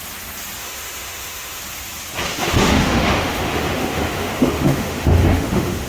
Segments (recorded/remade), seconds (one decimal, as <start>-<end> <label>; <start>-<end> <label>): 0.0-0.6 recorded; 0.6-1.6 remade; 1.6-2.3 recorded; 2.3-5.9 remade